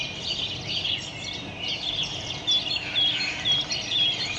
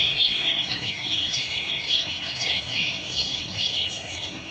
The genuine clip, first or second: first